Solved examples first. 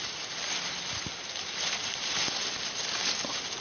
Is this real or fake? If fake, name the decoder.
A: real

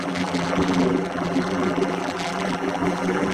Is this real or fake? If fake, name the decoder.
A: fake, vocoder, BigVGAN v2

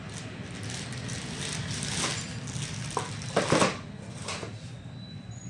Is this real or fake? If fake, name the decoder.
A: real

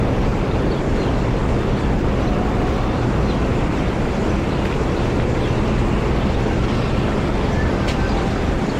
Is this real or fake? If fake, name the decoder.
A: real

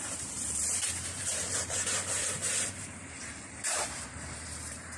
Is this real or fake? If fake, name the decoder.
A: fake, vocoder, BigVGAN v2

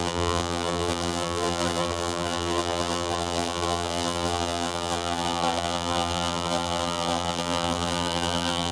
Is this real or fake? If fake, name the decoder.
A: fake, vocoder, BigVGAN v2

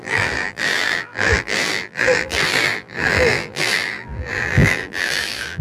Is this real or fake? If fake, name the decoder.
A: fake, vocoder, BigVGAN v2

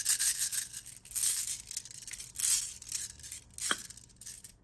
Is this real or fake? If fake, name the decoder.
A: real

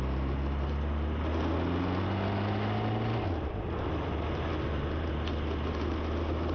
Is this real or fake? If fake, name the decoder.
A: real